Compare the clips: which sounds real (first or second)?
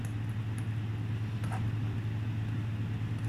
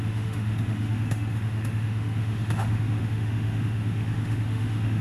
first